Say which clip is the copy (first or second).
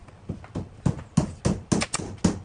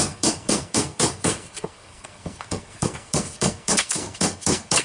second